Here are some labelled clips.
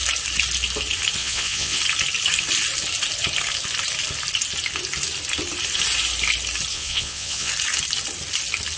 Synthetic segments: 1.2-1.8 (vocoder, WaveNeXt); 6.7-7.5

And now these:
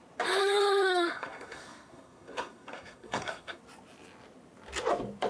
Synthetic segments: 0.4-3.6 (codec, SNAC)

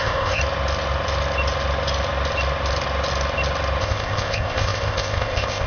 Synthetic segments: 0.0-0.4 (codec, ZipCodec); 3.8-5.7

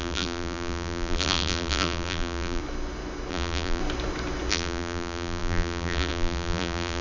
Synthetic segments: 0.0-2.6 (vocoder, BigVGAN v2); 3.3-3.8; 4.5-7.0

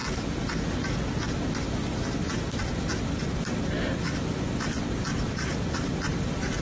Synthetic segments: 0.0-4.0 (vocoder, BigVGAN v2); 5.1-6.6

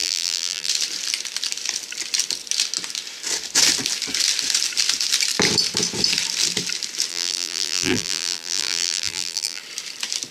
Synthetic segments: 0.0-0.7 (vocoder, BigVGAN v2); 7.1-9.6